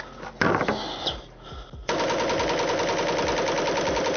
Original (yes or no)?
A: yes